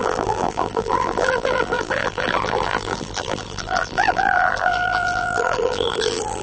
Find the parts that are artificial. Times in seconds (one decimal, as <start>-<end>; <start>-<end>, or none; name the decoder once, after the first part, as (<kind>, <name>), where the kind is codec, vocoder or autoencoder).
0.0-6.4 (vocoder, BigVGAN v2)